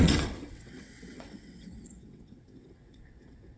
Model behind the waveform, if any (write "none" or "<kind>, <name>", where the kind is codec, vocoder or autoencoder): vocoder, WaveNeXt